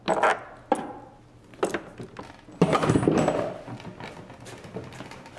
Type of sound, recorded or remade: recorded